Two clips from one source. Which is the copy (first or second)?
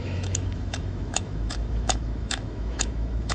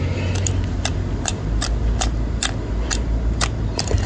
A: first